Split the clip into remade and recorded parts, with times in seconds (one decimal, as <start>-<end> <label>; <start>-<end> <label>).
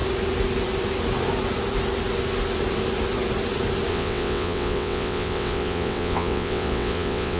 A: 0.0-3.9 recorded; 3.9-7.4 remade